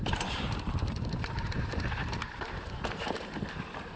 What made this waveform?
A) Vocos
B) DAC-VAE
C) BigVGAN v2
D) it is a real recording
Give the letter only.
C